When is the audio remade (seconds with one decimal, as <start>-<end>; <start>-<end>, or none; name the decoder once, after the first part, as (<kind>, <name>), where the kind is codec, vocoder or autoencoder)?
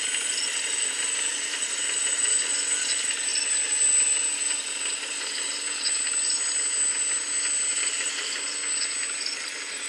1.3-1.8 (vocoder, BigVGAN v2); 7.7-8.4